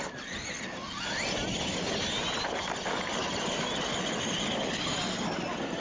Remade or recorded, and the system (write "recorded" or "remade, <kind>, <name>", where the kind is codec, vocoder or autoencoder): recorded